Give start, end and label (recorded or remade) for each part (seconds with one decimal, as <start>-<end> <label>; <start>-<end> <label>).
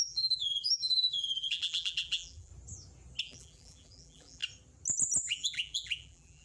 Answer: 0.0-2.5 remade; 2.5-3.2 recorded; 3.2-4.4 remade; 4.4-5.3 recorded; 5.3-6.4 remade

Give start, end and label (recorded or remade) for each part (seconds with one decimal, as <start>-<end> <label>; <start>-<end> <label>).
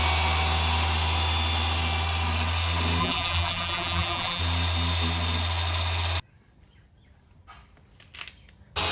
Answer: 0.0-3.0 recorded; 3.0-4.4 remade; 4.4-8.9 recorded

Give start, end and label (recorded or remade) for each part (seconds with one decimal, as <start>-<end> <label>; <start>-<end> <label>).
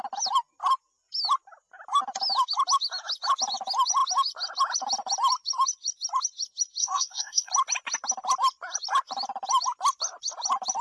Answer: 0.0-6.8 recorded; 6.8-7.5 remade; 7.5-10.8 recorded